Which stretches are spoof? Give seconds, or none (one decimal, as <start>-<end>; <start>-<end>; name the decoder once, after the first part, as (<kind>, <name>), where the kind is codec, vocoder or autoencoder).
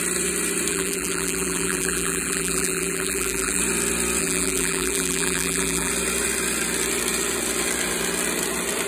0.7-3.6 (vocoder, BigVGAN v2); 4.2-5.9